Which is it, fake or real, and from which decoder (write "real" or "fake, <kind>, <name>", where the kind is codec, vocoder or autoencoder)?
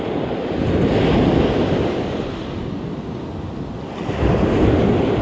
real